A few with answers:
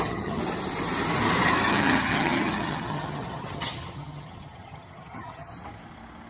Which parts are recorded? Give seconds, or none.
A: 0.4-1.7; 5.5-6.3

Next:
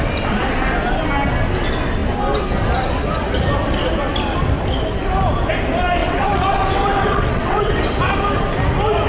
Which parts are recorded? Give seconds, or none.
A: 0.0-6.0; 7.8-9.1

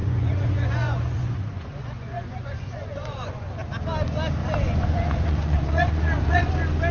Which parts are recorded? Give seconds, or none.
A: 3.5-4.4; 6.5-6.9

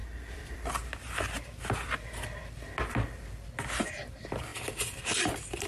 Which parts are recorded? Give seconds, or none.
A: 0.7-4.5; 5.0-5.7

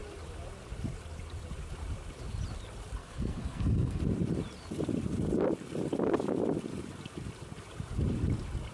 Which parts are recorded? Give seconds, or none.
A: 0.0-3.0; 4.0-8.7